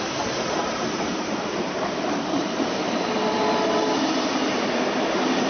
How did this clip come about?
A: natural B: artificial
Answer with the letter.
B